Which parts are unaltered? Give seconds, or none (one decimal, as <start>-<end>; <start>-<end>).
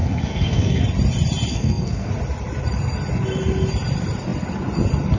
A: 0.8-1.5; 2.1-5.2